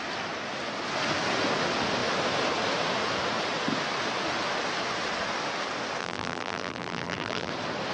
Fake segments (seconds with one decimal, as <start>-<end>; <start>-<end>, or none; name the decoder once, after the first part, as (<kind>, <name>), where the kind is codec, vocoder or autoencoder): 6.0-7.5 (vocoder, BigVGAN v2)